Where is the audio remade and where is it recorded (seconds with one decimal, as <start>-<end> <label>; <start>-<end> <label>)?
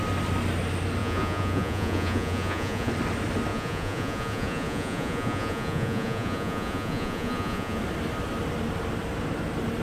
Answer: 0.0-1.0 recorded; 1.0-2.9 remade; 2.9-3.5 recorded; 3.5-7.8 remade; 7.8-9.8 recorded